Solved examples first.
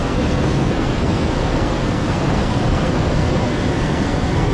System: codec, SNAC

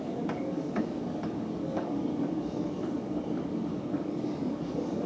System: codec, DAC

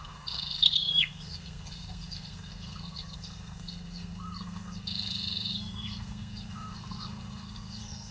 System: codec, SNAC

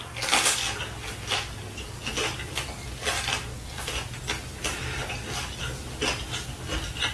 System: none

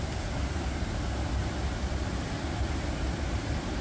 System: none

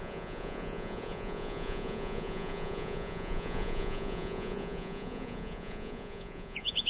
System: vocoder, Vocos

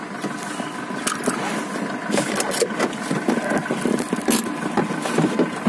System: none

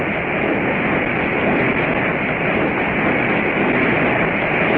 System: none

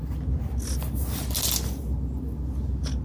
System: none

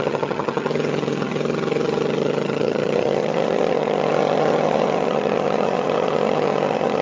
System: vocoder, HiFi-GAN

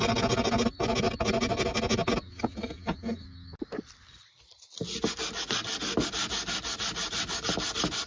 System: none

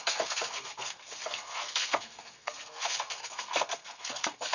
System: codec, SNAC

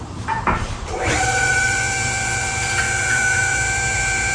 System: vocoder, BigVGAN v2